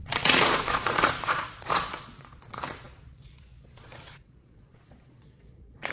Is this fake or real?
fake